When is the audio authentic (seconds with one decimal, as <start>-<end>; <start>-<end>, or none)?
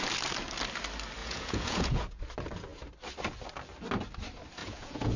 0.0-1.2; 2.2-4.6